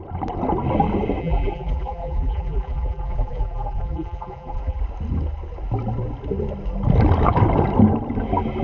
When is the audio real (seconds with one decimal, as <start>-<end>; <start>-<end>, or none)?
0.0-1.2; 4.8-8.6